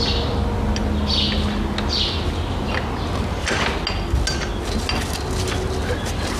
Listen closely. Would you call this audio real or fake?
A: real